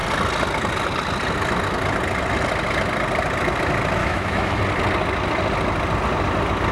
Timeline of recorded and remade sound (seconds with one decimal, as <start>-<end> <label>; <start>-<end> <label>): 0.0-4.0 recorded; 4.0-4.6 remade; 4.6-6.7 recorded